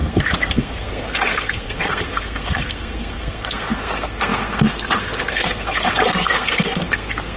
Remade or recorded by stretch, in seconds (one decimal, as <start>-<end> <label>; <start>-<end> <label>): 0.0-7.4 remade